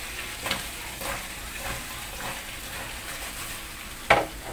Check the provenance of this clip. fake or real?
real